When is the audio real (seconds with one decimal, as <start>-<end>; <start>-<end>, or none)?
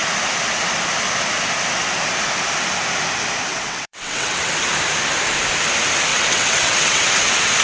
0.0-3.5; 4.5-6.1; 7.1-7.6